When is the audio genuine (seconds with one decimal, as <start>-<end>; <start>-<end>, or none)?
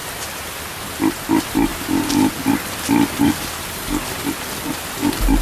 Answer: 0.0-5.4